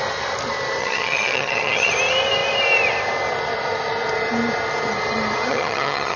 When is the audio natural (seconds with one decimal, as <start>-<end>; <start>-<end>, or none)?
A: 0.0-0.8; 1.9-5.5